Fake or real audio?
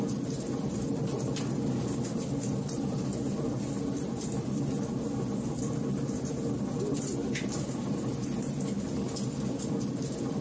real